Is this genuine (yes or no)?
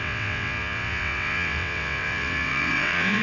no